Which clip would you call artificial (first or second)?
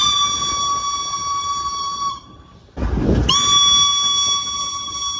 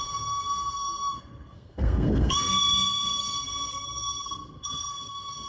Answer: second